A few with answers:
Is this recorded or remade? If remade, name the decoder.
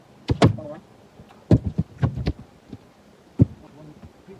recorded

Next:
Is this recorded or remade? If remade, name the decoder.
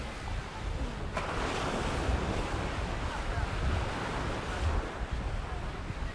recorded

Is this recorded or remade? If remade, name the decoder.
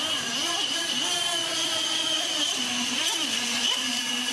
recorded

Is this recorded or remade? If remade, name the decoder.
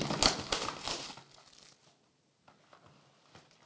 recorded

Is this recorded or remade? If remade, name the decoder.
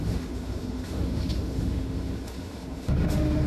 remade, autoencoder, DAC-VAE